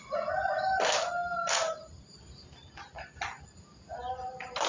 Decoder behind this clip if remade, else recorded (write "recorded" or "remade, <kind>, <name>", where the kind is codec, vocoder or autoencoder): recorded